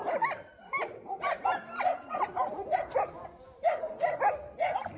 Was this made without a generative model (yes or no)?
yes